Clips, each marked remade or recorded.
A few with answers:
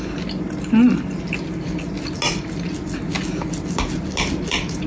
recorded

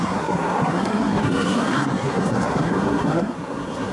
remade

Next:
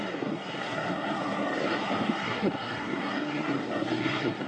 remade